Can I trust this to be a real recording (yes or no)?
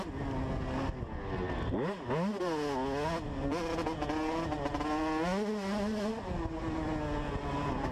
yes